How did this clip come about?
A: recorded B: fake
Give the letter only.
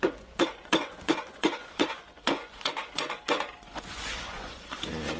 B